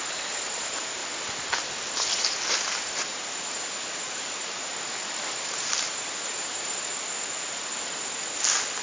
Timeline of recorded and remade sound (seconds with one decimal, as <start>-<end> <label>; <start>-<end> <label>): 0.0-1.0 remade; 1.0-2.5 recorded; 2.5-4.7 remade; 4.7-5.2 recorded; 5.2-6.9 remade; 6.9-8.8 recorded